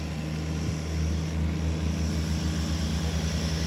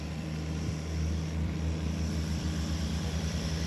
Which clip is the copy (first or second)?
second